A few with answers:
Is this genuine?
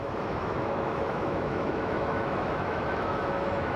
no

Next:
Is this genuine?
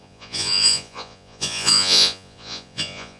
no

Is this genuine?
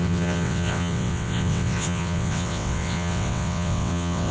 no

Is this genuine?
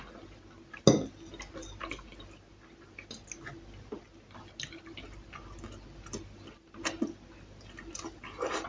yes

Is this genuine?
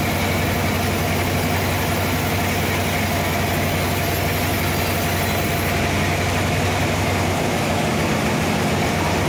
yes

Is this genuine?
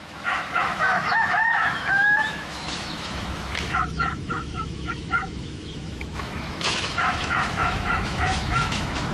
no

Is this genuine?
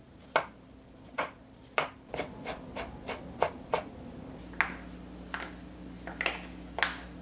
yes